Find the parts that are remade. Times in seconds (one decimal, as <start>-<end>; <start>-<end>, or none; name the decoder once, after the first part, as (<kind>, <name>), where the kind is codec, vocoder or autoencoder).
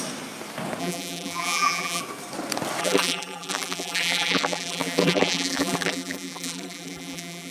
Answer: 0.8-2.0 (vocoder, BigVGAN v2); 2.8-7.5